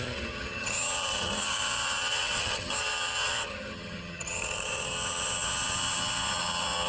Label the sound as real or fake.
fake